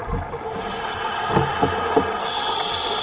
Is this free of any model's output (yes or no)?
yes